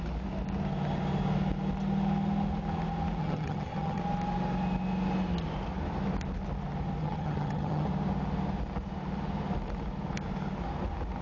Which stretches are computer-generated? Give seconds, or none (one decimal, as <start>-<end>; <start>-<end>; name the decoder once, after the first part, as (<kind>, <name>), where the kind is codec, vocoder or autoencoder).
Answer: 3.2-4.0 (vocoder, HiFi-GAN); 7.0-7.9

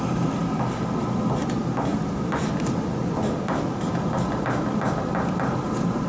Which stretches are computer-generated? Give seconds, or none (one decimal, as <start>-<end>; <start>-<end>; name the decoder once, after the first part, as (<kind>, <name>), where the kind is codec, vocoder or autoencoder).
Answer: none

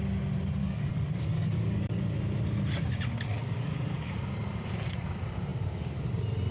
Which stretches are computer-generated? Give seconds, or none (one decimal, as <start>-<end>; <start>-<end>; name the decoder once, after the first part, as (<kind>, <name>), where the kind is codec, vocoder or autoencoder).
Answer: 0.6-2.2 (codec, DAC); 3.4-4.1

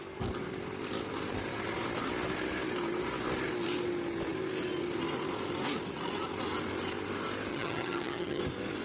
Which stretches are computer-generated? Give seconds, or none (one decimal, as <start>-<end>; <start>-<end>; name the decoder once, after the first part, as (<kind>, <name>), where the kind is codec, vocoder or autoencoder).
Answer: 7.5-8.4 (vocoder, HiFi-GAN)

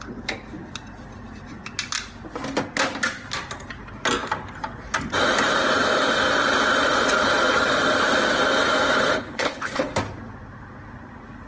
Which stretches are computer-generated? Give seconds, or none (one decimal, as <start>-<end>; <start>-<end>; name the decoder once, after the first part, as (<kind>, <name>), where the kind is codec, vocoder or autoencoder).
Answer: 9.2-9.9 (codec, HILCodec)

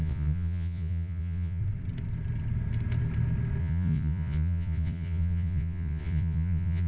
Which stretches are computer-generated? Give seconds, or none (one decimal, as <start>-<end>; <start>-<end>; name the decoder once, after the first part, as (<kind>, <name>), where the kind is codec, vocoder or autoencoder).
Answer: 0.0-1.6 (vocoder, Vocos); 3.6-6.9

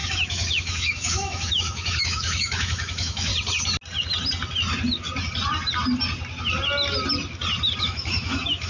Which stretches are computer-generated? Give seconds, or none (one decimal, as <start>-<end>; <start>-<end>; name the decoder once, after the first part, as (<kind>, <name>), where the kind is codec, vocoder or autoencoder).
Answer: 0.0-3.3 (autoencoder, DAC-VAE); 7.8-8.7

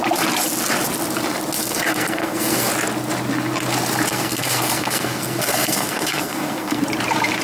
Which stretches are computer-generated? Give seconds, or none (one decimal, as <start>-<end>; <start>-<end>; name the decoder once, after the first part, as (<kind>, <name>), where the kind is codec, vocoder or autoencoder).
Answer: 1.6-2.7 (codec, SNAC); 4.1-6.8